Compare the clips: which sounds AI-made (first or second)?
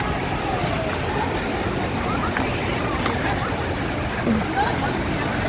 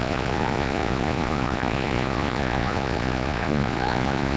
second